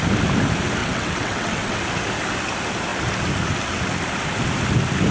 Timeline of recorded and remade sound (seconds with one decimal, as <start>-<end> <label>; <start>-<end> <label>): 0.0-0.8 recorded; 0.8-1.8 remade; 1.8-5.1 recorded